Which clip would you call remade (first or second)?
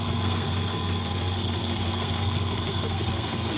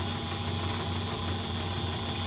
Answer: first